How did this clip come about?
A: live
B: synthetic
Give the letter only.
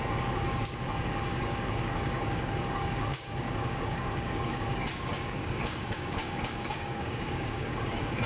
B